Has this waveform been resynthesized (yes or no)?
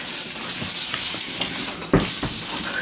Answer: no